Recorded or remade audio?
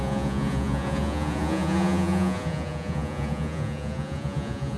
remade